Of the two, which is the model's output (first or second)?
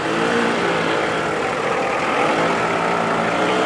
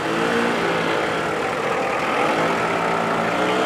first